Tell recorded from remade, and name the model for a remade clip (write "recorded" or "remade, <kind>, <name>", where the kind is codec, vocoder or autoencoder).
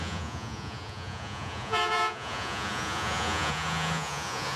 remade, vocoder, Vocos